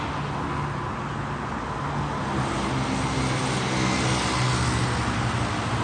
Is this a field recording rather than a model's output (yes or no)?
yes